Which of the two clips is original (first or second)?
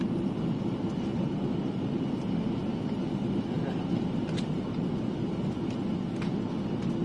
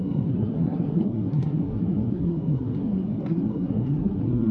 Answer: first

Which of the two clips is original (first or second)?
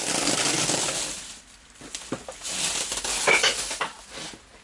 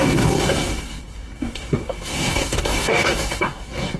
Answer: first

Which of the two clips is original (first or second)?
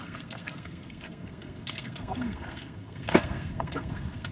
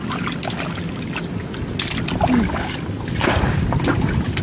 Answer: second